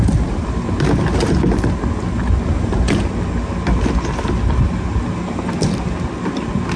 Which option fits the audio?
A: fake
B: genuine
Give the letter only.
B